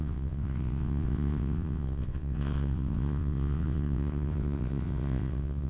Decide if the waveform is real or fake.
fake